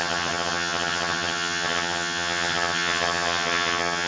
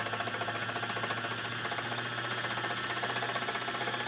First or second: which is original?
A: second